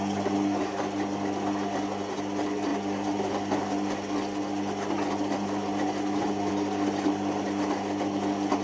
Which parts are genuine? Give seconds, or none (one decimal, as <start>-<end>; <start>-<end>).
0.0-8.6